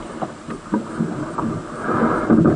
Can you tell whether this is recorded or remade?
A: recorded